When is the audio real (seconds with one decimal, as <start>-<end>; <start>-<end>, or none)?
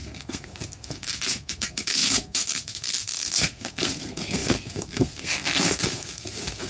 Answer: none